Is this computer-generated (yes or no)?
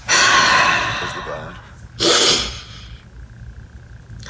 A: no